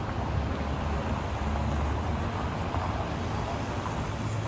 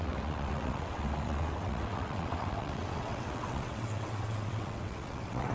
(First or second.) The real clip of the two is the first